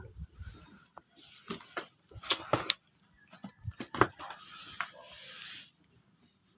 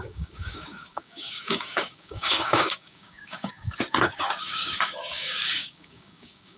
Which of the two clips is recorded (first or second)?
first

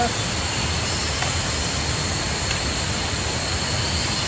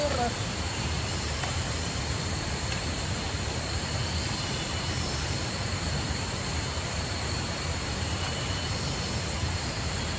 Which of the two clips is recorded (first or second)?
first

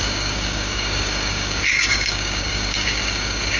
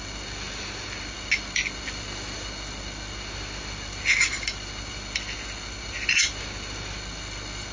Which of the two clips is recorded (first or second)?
second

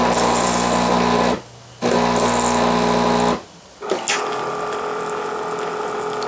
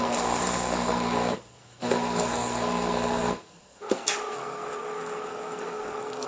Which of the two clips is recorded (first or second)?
first